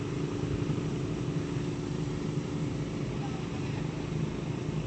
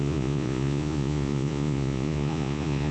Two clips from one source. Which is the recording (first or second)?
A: first